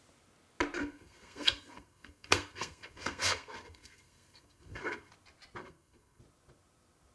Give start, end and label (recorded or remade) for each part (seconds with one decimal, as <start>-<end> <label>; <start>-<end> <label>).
0.0-0.8 recorded; 0.8-5.1 remade; 5.1-5.6 recorded; 5.6-6.2 remade; 6.2-7.1 recorded